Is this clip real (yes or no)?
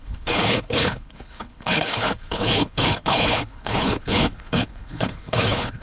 no